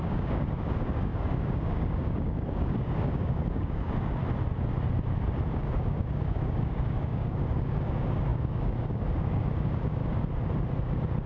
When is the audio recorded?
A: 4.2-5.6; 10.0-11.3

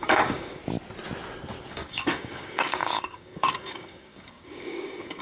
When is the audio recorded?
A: 0.6-1.7

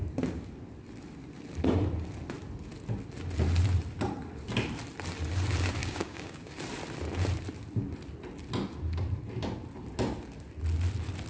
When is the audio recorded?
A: 0.0-5.8; 6.5-11.3

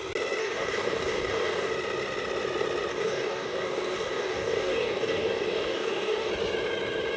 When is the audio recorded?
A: 0.0-0.4; 1.7-2.9; 6.3-7.2

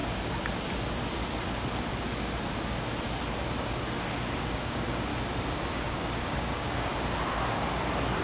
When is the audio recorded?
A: 0.0-4.4; 5.1-5.7; 6.9-8.2

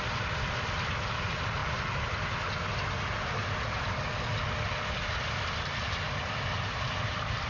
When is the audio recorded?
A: 0.0-7.5

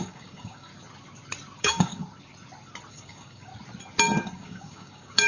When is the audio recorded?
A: 0.7-1.6; 2.0-2.9; 3.5-4.2